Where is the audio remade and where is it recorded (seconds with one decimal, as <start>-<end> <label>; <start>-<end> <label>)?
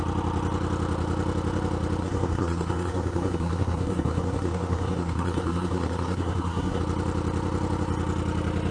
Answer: 0.0-2.0 recorded; 2.0-6.8 remade; 6.8-8.7 recorded